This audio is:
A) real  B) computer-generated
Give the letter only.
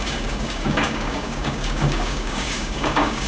B